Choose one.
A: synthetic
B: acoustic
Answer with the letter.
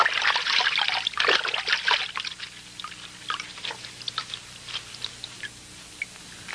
B